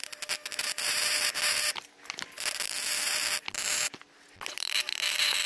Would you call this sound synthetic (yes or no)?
yes